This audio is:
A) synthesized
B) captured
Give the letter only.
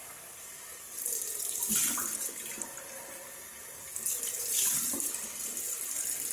B